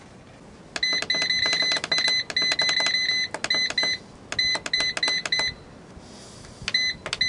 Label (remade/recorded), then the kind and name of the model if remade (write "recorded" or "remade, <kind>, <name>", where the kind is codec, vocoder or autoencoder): recorded